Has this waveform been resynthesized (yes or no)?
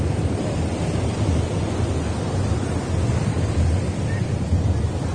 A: no